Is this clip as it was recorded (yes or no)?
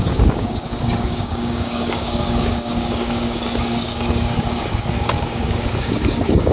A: no